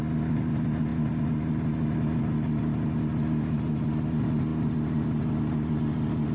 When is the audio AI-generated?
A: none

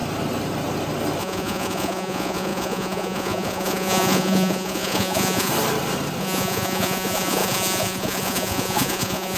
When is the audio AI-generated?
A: 1.2-5.5 (vocoder, Vocos); 6.2-9.4